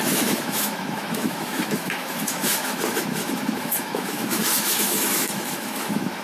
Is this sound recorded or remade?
remade